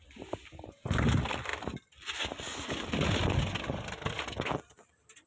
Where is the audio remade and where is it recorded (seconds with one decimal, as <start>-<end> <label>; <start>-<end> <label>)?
0.0-5.3 recorded

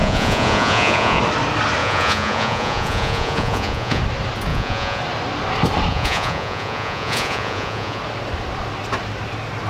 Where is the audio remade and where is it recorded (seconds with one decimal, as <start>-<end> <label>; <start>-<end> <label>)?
0.0-1.2 remade; 1.2-1.8 recorded; 1.8-4.0 remade; 4.0-4.5 recorded; 4.5-5.0 remade; 5.0-5.9 recorded; 5.9-8.0 remade; 8.0-9.7 recorded

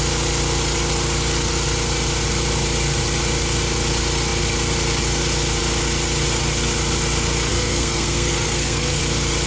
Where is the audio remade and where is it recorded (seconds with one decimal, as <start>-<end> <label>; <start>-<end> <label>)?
0.0-7.5 recorded; 7.5-9.0 remade; 9.0-9.5 recorded

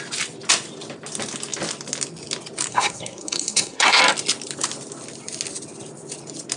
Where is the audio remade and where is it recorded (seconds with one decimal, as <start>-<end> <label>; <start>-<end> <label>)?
0.0-2.7 recorded; 2.7-4.0 remade; 4.0-6.6 recorded

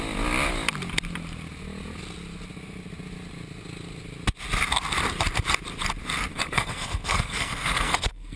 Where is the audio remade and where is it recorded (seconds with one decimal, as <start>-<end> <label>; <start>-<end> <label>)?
0.0-6.3 recorded; 6.3-8.4 remade

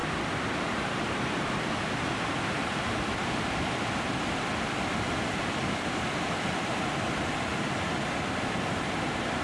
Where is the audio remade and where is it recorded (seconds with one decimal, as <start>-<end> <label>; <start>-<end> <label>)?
0.0-1.0 recorded; 1.0-3.2 remade; 3.2-4.5 recorded; 4.5-7.5 remade; 7.5-8.4 recorded; 8.4-9.4 remade

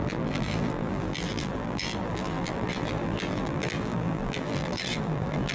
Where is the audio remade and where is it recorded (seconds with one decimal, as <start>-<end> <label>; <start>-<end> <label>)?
0.0-5.5 remade

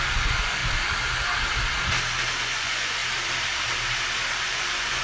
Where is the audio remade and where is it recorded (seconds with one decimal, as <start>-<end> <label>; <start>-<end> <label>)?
0.0-0.6 remade; 0.6-2.4 recorded; 2.4-3.0 remade; 3.0-4.4 recorded; 4.4-5.0 remade